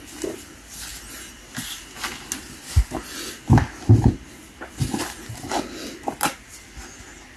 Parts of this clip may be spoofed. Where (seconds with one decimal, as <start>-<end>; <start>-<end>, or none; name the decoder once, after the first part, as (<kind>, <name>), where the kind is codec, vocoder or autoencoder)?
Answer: none